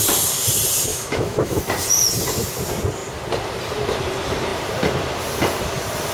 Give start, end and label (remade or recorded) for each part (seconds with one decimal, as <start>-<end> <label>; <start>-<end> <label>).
0.0-0.9 recorded; 0.9-1.6 remade; 1.6-6.1 recorded